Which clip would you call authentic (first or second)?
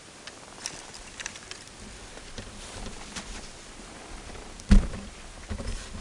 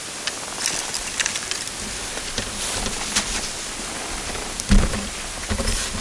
second